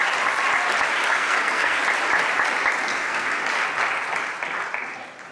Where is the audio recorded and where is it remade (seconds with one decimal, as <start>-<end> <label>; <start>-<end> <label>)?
0.0-1.0 recorded; 1.0-1.8 remade; 1.8-2.9 recorded; 2.9-3.4 remade; 3.4-5.3 recorded